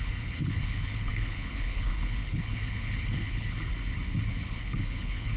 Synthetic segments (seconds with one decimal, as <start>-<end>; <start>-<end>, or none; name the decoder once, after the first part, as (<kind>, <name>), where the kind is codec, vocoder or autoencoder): 0.0-3.7 (codec, HILCodec); 4.3-5.4